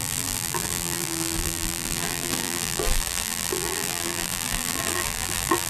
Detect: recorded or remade remade